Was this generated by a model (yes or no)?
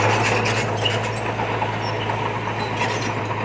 no